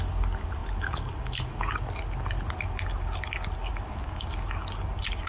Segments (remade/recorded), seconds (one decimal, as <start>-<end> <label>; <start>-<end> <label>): 0.0-5.3 recorded